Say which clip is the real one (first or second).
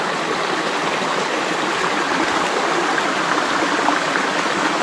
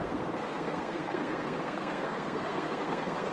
first